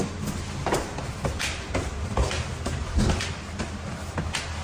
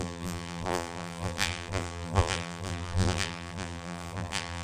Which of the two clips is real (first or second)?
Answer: first